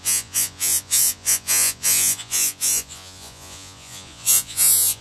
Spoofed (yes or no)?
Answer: yes